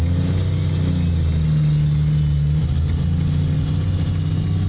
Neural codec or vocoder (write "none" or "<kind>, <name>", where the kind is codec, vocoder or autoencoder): none